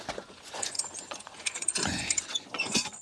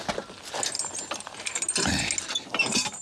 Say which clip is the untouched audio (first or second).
second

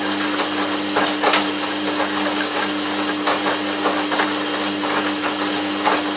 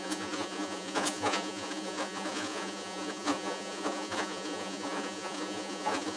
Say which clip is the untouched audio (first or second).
first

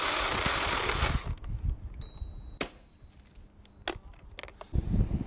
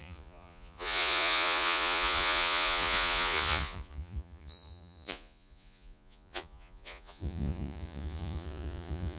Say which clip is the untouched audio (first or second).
first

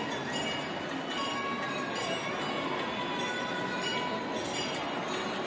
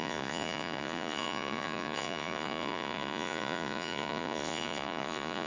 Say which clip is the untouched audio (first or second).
first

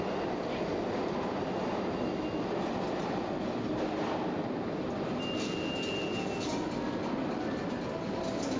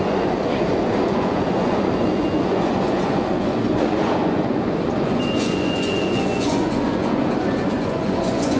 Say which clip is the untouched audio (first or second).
first